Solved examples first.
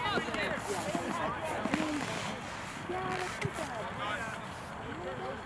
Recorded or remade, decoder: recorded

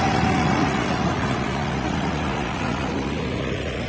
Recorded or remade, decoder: remade, vocoder, Vocos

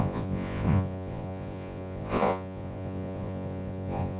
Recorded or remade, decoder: remade, vocoder, Vocos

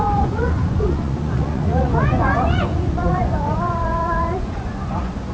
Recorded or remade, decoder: remade, vocoder, Vocos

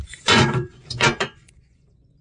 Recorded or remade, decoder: remade, vocoder, Vocos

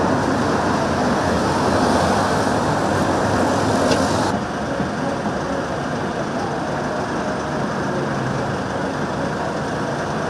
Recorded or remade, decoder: recorded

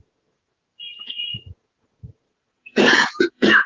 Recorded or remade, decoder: remade, vocoder, Vocos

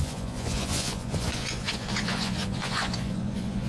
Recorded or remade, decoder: remade, vocoder, Vocos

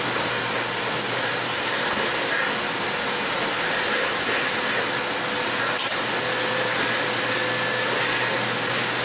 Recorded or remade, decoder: recorded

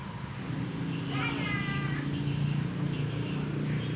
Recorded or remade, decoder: recorded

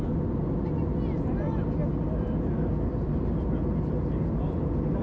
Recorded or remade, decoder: recorded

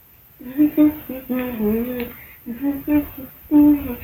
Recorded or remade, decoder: recorded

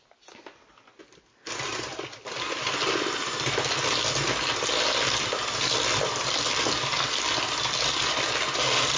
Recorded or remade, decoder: recorded